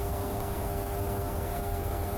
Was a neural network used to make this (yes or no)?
yes